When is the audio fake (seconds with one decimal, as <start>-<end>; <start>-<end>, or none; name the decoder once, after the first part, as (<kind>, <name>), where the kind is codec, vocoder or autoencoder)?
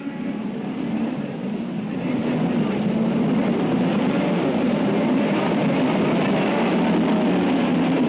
0.0-2.2 (vocoder, BigVGAN v2); 3.5-5.6; 7.6-8.1